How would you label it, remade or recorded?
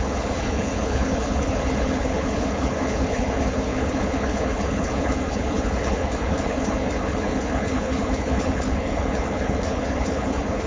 remade